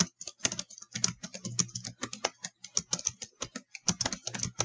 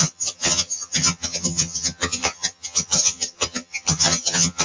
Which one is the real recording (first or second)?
first